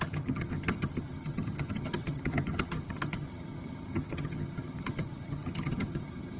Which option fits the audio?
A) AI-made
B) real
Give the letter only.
A